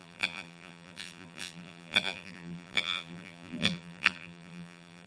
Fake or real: fake